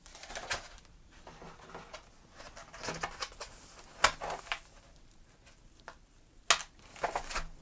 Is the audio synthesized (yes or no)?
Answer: no